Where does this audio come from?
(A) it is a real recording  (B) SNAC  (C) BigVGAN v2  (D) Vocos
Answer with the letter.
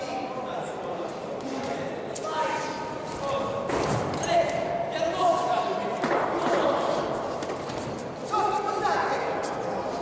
A